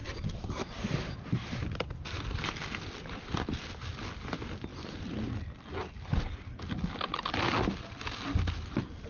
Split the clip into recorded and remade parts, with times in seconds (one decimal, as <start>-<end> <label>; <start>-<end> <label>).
0.0-9.1 recorded